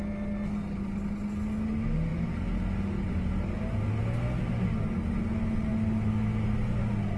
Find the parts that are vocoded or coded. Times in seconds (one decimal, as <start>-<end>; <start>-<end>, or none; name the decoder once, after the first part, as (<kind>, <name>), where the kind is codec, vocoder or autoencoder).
none